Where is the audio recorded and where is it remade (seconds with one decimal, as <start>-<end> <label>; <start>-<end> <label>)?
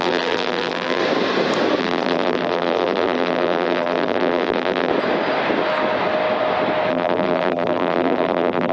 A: 0.0-1.0 remade; 1.0-1.8 recorded; 1.8-4.9 remade; 4.9-6.9 recorded; 6.9-8.7 remade